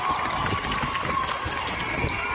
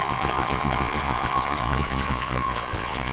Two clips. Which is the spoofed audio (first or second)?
second